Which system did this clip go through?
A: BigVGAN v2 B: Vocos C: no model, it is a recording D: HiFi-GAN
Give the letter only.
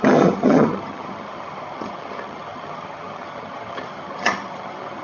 D